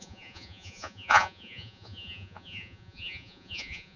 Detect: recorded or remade remade